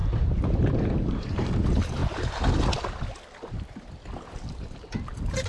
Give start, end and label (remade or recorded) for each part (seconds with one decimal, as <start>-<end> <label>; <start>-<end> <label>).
0.0-1.5 remade; 1.5-5.5 recorded

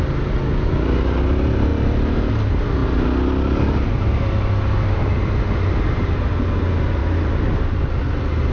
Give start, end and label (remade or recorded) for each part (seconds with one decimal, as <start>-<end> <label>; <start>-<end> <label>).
0.0-7.0 recorded; 7.0-7.9 remade; 7.9-8.5 recorded